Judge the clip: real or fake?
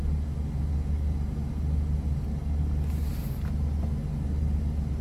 real